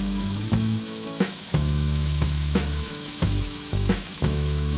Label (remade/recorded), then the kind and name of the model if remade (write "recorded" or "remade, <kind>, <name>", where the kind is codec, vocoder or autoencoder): remade, autoencoder, DAC-VAE